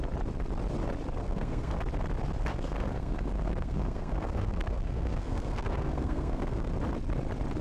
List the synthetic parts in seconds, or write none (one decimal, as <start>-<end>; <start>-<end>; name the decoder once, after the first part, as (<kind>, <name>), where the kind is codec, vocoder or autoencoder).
1.2-1.7 (codec, SNAC); 2.5-6.7